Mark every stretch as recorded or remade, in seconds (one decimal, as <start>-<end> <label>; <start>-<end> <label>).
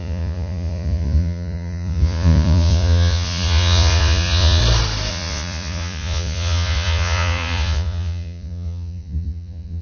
0.0-4.6 remade; 4.6-5.1 recorded; 5.1-9.8 remade